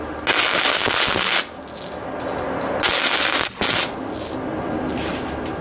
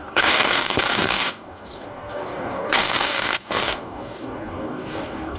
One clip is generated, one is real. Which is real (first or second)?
first